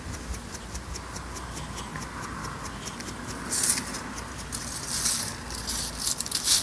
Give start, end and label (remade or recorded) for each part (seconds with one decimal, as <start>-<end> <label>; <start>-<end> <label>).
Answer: 0.0-6.6 remade